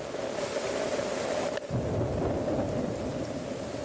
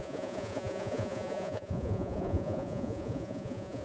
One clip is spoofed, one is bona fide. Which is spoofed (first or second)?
second